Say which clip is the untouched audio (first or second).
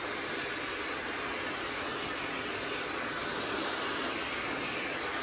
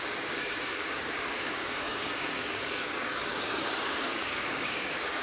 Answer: first